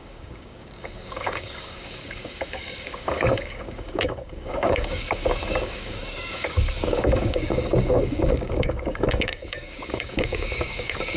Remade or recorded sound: remade